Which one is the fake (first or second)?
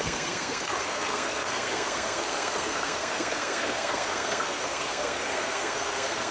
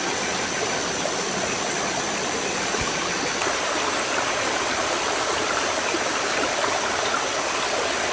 first